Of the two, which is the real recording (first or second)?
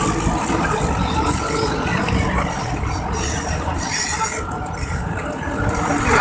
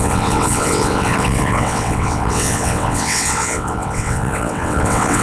first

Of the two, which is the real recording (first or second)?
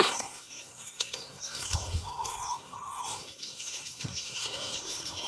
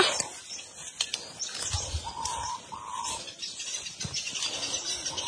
second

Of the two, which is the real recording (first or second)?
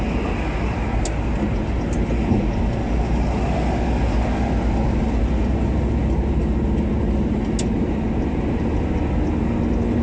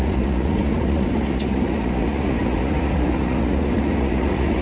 first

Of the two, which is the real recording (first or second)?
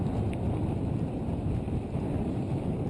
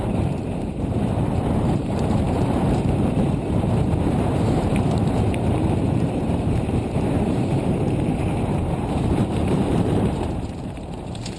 first